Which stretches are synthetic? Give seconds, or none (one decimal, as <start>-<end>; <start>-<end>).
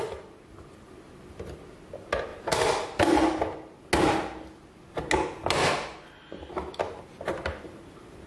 none